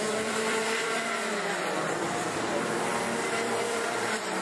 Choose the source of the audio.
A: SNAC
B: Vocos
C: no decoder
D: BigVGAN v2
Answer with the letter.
D